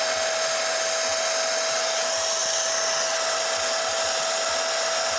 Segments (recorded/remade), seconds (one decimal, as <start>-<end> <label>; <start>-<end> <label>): 0.0-5.2 recorded